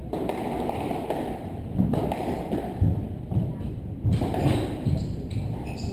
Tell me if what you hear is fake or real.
real